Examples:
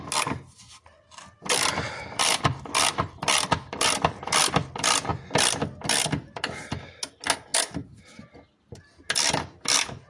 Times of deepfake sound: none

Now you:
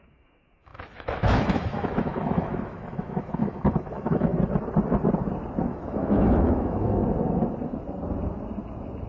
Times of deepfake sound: 0.0-4.3 (autoencoder, DAC-VAE); 5.6-7.0

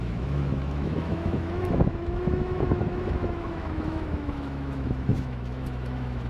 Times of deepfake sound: 0.0-6.3 (autoencoder, DAC-VAE)